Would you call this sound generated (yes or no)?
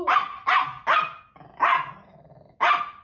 no